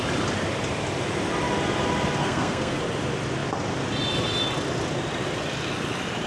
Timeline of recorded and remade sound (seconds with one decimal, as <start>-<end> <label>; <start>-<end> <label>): 0.0-2.2 recorded; 2.2-2.8 remade; 2.8-6.3 recorded